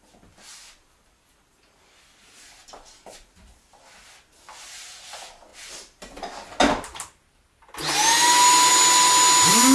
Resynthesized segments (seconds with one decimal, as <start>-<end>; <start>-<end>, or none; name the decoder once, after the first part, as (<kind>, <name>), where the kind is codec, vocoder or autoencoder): none

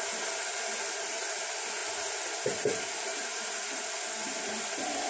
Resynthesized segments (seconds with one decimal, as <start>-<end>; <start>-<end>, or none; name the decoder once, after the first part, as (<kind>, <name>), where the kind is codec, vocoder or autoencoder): none

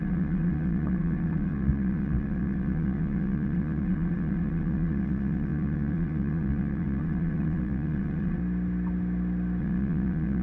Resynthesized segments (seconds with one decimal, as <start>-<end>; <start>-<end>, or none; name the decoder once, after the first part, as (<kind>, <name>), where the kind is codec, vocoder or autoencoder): 0.0-8.4 (vocoder, Vocos); 9.6-10.4